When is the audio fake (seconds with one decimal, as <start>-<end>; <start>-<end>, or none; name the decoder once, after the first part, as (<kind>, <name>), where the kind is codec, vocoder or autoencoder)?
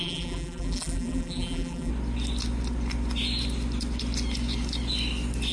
0.0-1.9 (vocoder, BigVGAN v2)